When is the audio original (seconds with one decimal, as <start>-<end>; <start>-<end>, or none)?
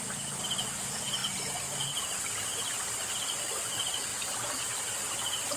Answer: 0.0-1.2; 2.7-4.1; 4.9-5.6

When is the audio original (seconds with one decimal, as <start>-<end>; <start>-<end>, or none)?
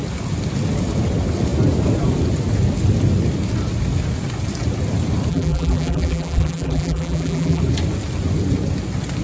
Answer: 0.0-5.3; 7.6-9.2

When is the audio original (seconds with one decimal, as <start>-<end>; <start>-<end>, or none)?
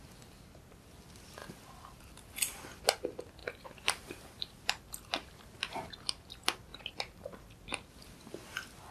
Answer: 0.0-1.4; 2.8-3.4; 5.9-6.7; 7.5-8.9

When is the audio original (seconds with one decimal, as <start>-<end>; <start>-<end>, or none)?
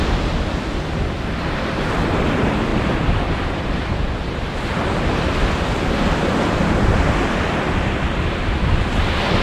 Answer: 0.0-2.7; 4.4-9.4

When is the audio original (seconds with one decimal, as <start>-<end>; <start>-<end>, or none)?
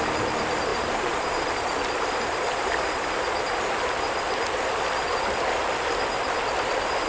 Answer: 0.0-0.7; 1.5-7.1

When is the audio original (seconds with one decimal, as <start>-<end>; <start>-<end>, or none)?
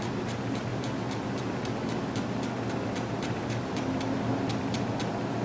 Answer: 0.0-5.4